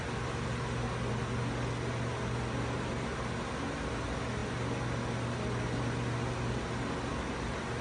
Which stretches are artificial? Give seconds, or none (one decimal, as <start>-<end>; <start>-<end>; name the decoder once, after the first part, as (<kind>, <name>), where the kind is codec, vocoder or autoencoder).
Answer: none